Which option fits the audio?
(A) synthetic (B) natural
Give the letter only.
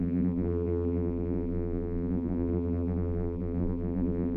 A